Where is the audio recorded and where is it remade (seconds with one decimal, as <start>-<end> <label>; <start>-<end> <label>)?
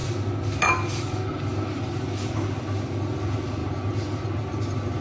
0.0-1.3 recorded; 1.3-1.9 remade; 1.9-3.6 recorded; 3.6-4.4 remade; 4.4-5.0 recorded